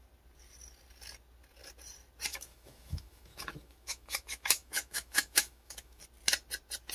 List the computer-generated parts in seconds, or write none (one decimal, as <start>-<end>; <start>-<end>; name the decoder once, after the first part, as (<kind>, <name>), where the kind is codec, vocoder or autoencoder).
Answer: 2.3-6.0 (autoencoder, DAC-VAE)